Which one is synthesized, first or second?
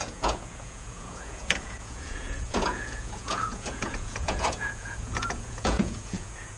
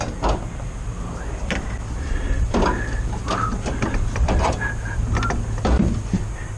first